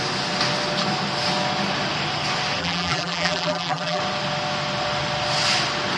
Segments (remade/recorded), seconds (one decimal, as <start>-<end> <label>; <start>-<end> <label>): 0.0-2.6 recorded; 2.6-4.0 remade; 4.0-6.0 recorded